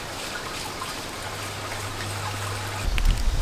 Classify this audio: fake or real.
real